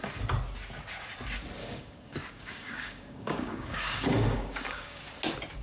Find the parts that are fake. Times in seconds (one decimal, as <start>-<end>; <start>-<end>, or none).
1.6-5.0